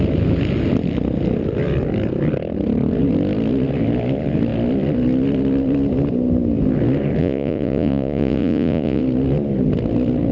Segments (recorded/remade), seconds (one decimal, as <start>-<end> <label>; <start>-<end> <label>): 0.0-7.2 recorded; 7.2-9.0 remade; 9.0-10.3 recorded